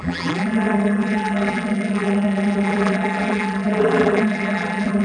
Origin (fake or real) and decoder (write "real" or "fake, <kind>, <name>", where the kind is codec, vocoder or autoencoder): fake, vocoder, BigVGAN v2